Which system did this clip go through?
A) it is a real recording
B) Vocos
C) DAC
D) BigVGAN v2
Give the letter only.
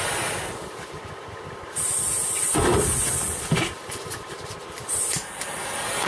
D